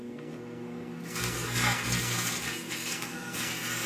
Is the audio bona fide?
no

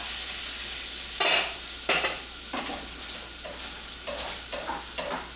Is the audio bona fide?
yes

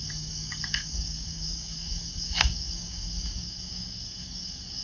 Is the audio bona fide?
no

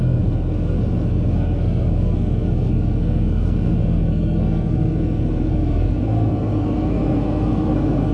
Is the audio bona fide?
no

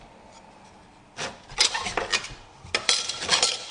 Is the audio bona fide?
yes